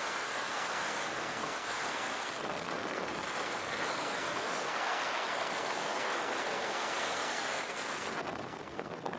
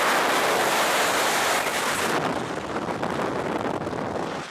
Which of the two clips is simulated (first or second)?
first